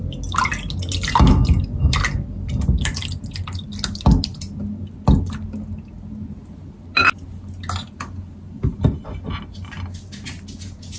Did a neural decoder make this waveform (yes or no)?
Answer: no